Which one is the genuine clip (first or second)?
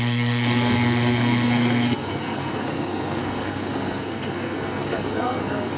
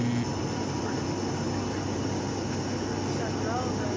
second